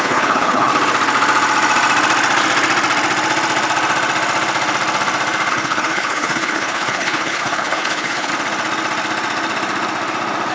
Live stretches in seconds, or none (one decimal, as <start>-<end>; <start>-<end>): 0.7-5.5; 8.3-10.5